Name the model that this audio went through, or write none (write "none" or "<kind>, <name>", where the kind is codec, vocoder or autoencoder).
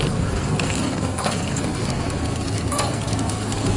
codec, SNAC